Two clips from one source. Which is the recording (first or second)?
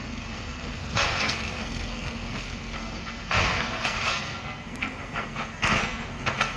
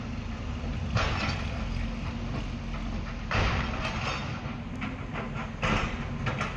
second